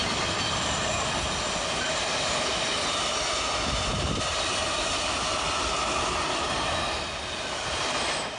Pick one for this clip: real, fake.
real